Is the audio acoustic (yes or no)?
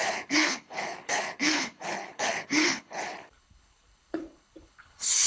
no